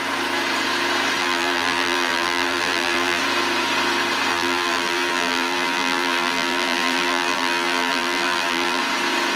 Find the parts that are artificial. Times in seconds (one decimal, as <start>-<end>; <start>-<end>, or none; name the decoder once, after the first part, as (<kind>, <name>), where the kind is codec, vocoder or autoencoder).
1.2-3.2 (vocoder, BigVGAN v2); 4.3-8.8